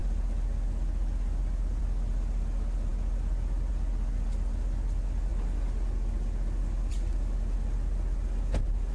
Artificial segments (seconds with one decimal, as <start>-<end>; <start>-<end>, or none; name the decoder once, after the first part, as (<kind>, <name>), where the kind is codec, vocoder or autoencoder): none